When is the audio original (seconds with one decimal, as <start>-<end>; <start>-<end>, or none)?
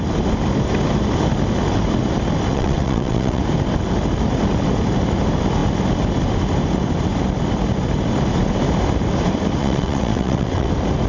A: 0.0-2.5; 3.4-9.6; 10.7-11.1